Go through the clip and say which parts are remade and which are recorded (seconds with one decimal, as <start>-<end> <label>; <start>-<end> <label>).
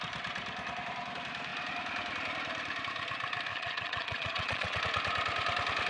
0.0-3.5 recorded; 3.5-4.8 remade; 4.8-5.9 recorded